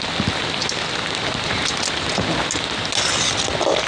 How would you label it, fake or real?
real